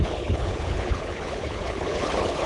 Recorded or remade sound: remade